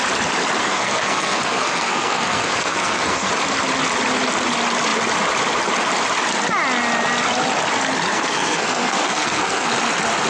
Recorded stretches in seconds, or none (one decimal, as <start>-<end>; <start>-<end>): 0.0-0.6; 3.3-8.1; 9.7-10.3